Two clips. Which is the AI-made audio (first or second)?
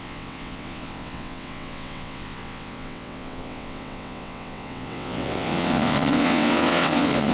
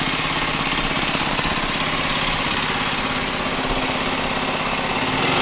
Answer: first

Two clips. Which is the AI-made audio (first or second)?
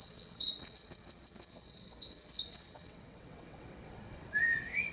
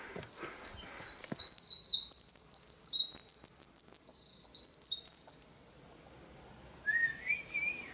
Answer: first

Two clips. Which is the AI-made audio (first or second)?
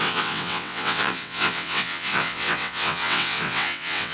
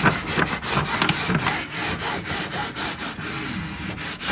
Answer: first